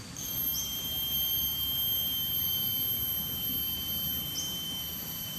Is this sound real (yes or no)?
no